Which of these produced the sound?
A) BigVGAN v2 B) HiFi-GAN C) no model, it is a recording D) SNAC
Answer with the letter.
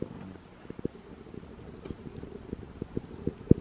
C